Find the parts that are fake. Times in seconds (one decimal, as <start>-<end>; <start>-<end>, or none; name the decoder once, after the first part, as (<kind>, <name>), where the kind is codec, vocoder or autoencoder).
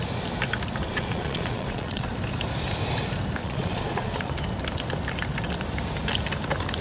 0.9-2.1 (vocoder, Vocos); 3.4-4.3